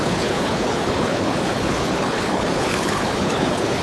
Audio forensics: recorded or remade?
remade